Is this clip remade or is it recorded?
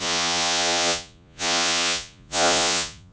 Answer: remade